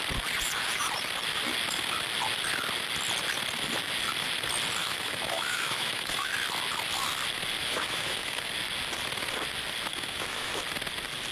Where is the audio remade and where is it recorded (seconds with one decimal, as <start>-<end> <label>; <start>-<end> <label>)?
0.0-4.8 recorded; 4.8-6.3 remade; 6.3-7.6 recorded; 7.6-8.5 remade; 8.5-9.9 recorded; 9.9-10.5 remade; 10.5-11.3 recorded